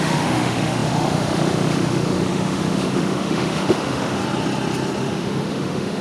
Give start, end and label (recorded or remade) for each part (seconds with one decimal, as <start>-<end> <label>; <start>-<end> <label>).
0.0-4.2 remade; 4.2-5.0 recorded; 5.0-6.0 remade